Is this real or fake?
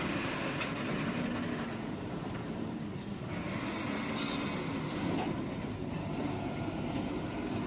real